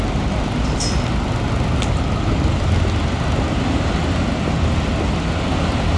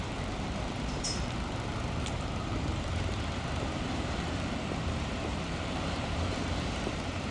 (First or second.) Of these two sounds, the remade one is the second